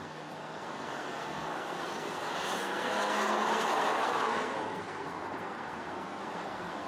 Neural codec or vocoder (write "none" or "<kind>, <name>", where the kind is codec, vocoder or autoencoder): codec, SNAC